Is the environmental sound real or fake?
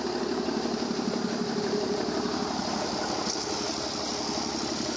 real